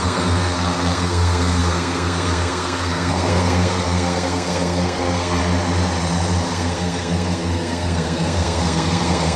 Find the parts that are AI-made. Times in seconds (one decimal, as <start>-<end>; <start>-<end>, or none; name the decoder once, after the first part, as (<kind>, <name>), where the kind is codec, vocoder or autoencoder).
0.0-5.4 (codec, SNAC); 6.5-9.4